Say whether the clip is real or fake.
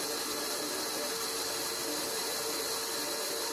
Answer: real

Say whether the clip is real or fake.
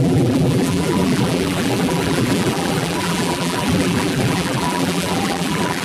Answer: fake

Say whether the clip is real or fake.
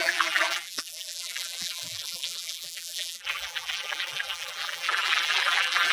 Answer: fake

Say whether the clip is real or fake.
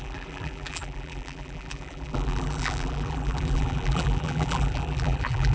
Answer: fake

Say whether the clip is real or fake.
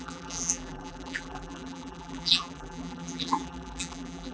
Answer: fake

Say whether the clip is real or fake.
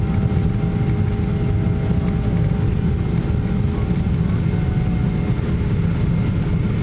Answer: real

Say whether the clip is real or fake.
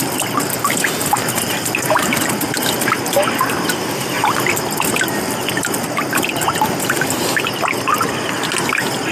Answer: real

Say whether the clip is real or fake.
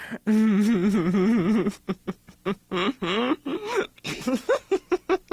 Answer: real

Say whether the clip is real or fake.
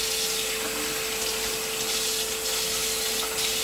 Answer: real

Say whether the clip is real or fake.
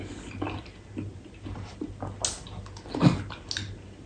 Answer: real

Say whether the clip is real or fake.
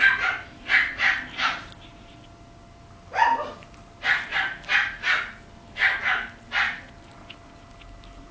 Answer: real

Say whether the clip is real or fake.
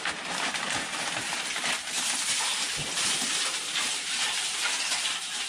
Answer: fake